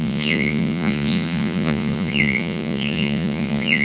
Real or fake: fake